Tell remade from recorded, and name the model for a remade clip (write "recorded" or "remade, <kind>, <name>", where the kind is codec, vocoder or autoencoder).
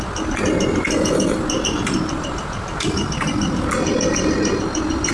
recorded